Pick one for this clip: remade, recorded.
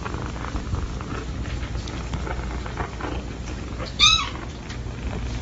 recorded